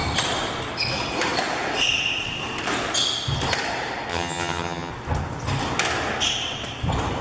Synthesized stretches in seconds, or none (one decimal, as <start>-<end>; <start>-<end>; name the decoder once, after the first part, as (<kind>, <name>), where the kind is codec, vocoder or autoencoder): 4.1-4.9 (vocoder, HiFi-GAN)